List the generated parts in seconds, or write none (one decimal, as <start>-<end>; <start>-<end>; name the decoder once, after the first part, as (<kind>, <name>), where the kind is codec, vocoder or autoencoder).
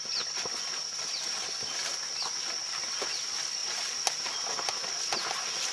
none